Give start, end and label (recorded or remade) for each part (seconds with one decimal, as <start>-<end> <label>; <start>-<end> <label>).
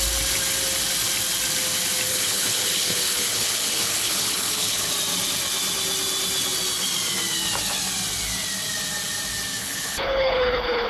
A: 0.0-2.1 recorded; 2.1-4.9 remade; 4.9-9.6 recorded; 9.6-10.9 remade